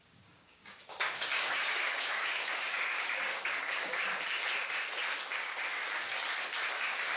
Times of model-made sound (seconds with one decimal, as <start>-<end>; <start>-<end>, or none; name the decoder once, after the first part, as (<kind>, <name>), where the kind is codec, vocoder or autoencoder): 0.0-4.1 (codec, DAC); 4.7-6.2; 6.7-7.2